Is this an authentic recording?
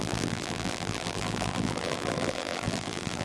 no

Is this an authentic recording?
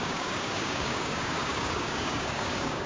no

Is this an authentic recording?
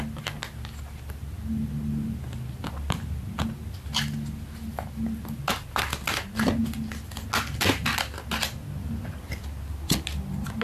yes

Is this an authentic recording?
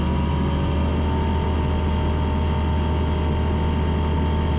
yes